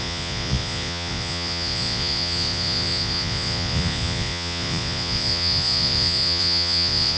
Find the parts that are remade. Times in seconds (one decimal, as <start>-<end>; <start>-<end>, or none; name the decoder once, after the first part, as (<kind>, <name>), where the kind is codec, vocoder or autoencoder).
0.0-7.2 (vocoder, Vocos)